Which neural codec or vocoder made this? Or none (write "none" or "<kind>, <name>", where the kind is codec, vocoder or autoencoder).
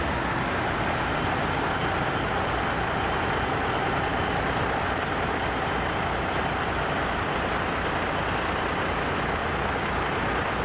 none